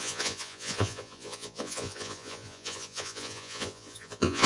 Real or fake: fake